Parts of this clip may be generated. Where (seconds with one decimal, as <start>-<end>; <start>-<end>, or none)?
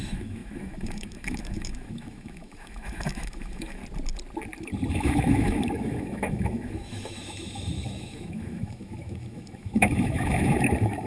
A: 0.0-3.8; 4.9-11.1